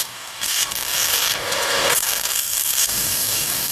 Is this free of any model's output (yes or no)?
no